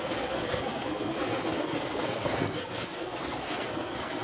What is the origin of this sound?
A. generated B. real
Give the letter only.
A